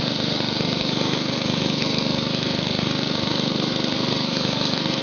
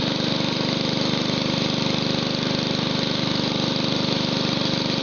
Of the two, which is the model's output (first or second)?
first